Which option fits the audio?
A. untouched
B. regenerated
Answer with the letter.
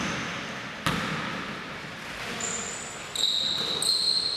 A